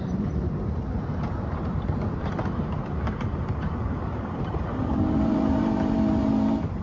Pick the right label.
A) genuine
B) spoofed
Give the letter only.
B